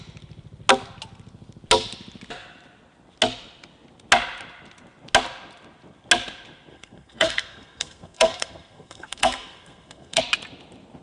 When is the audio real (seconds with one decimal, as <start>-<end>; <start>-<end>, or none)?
0.0-6.7; 10.2-11.0